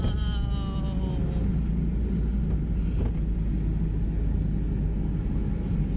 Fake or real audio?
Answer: real